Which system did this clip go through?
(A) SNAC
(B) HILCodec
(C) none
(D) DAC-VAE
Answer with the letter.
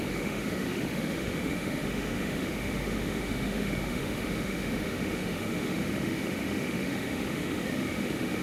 D